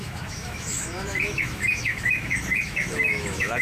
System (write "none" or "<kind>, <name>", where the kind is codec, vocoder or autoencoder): autoencoder, DAC-VAE